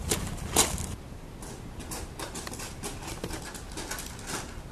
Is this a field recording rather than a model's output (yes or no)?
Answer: yes